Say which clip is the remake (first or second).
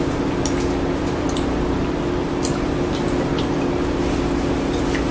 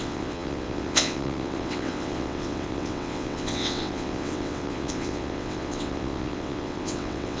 second